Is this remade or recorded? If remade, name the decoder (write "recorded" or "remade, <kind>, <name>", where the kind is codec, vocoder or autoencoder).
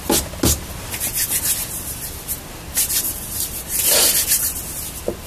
recorded